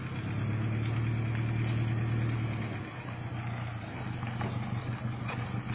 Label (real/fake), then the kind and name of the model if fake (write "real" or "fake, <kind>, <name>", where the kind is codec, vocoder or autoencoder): real